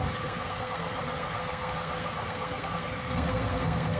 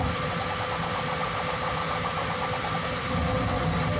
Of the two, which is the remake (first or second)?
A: first